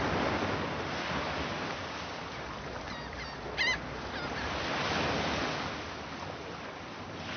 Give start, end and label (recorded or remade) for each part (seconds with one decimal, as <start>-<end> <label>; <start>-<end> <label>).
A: 0.0-7.4 recorded